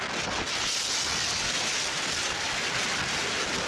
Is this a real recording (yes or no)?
yes